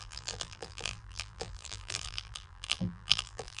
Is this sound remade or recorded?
remade